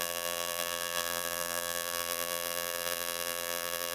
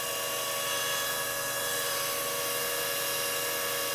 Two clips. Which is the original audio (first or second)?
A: second